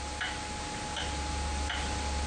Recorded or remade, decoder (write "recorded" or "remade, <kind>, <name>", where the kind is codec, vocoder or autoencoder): recorded